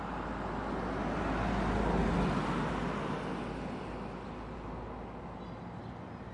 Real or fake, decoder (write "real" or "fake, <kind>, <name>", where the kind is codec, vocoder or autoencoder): real